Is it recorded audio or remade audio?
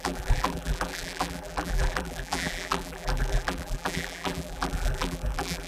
remade